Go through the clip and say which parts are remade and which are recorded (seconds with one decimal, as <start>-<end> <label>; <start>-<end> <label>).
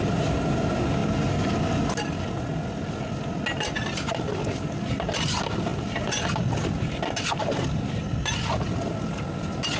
0.0-9.8 recorded